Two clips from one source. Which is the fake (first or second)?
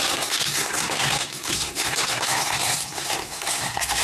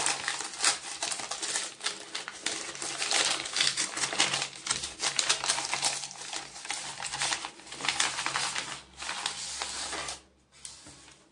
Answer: first